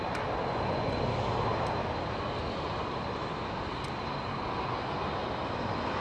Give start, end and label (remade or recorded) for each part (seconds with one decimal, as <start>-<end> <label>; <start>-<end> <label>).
0.0-0.5 recorded; 0.5-1.0 remade; 1.0-6.0 recorded